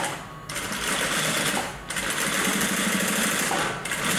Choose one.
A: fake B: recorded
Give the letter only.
B